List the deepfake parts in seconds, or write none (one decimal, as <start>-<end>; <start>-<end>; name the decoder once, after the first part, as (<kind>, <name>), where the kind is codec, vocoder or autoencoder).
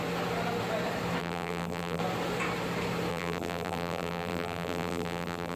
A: 1.2-2.0 (vocoder, BigVGAN v2); 3.1-5.6